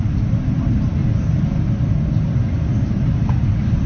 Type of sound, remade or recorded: recorded